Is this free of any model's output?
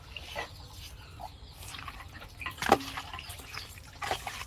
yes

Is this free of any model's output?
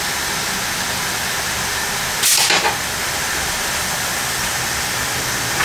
yes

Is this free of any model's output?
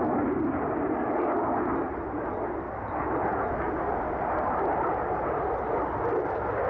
yes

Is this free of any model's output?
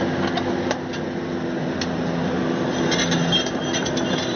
yes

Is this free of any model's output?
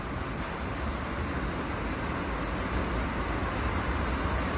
yes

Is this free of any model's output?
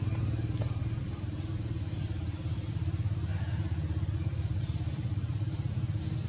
yes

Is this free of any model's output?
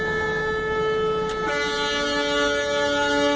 yes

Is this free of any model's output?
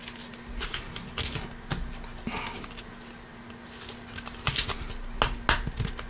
yes